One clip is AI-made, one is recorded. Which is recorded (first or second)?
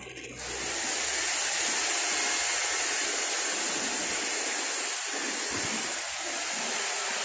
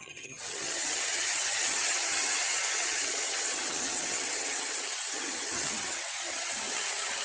first